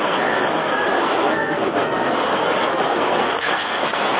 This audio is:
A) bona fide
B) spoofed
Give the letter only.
B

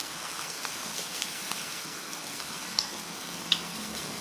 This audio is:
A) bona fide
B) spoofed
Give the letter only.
B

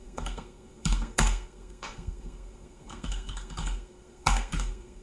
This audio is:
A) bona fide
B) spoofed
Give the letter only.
B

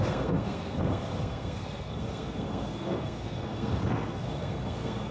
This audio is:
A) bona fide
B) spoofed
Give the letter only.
B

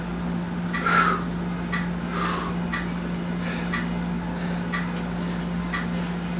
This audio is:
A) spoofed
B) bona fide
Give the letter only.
B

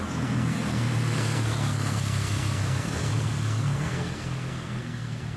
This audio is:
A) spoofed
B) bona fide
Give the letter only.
A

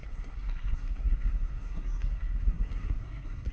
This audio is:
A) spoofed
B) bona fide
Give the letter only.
A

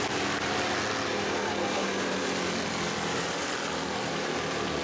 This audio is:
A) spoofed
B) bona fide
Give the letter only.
B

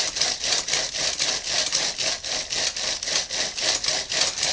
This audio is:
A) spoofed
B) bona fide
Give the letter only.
B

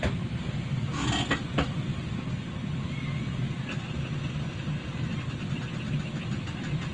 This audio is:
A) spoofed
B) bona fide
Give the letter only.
B